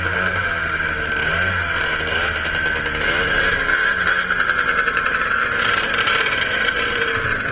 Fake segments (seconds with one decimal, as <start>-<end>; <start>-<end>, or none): 0.0-0.6; 3.3-7.5